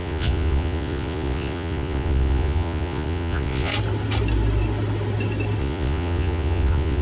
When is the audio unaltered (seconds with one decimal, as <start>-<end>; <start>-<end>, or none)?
3.7-5.6